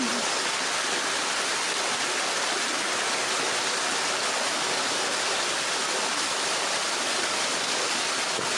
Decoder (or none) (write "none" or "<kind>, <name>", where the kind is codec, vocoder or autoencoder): none